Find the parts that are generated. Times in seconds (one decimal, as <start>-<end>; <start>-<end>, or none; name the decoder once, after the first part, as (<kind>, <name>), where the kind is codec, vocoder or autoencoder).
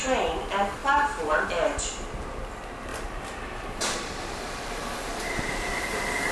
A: 0.8-1.5 (vocoder, BigVGAN v2); 2.9-6.3